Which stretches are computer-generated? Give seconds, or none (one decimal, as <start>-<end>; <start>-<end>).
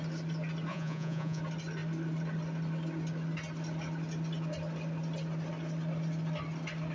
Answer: 0.7-1.4